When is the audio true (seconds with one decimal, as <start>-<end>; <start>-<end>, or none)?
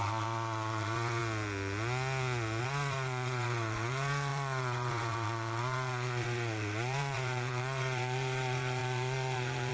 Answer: 1.2-2.6